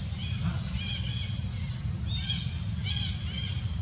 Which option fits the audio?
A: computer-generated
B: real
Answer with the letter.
B